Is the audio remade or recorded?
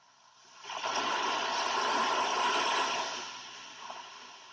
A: recorded